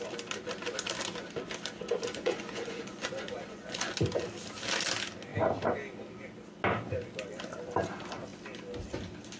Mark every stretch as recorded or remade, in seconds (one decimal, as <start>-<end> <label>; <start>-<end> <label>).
0.0-2.1 recorded; 2.1-3.9 remade; 3.9-9.4 recorded